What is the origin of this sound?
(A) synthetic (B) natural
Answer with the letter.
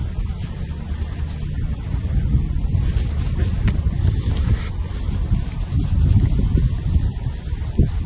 B